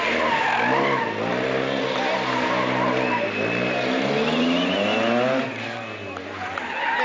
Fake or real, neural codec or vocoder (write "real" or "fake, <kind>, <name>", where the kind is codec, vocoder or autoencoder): real